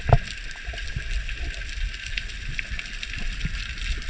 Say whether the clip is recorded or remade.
recorded